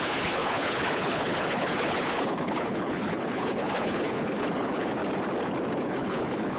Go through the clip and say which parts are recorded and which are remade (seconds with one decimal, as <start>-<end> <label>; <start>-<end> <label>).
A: 0.0-5.0 remade; 5.0-5.8 recorded; 5.8-6.6 remade